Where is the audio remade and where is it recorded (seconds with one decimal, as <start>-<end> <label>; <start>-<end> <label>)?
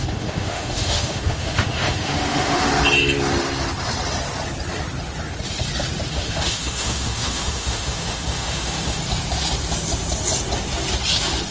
0.0-2.7 remade; 2.7-6.1 recorded; 6.1-9.0 remade; 9.0-11.5 recorded